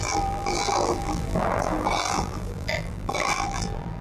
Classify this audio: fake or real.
fake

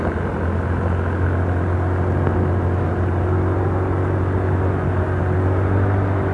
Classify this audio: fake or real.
real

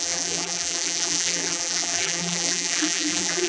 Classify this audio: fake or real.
fake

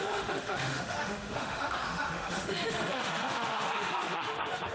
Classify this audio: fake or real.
fake